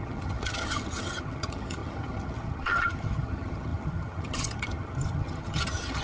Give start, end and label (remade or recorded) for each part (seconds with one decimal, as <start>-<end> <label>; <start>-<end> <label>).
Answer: 0.0-6.0 remade